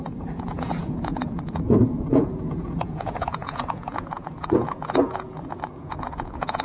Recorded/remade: remade